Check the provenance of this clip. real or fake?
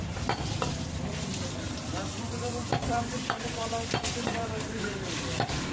fake